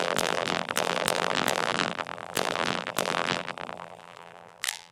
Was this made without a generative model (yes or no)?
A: no